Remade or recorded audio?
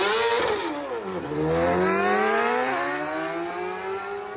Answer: recorded